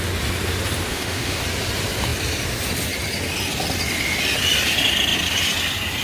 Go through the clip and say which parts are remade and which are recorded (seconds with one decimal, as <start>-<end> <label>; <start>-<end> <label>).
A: 0.0-0.9 recorded; 0.9-1.4 remade; 1.4-6.0 recorded